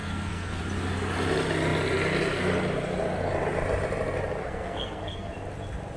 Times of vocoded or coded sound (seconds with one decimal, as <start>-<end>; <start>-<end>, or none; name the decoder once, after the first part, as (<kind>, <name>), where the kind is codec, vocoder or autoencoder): 0.0-0.6 (codec, SNAC); 4.4-5.3